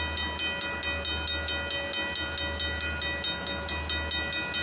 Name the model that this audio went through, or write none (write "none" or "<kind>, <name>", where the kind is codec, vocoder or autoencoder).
none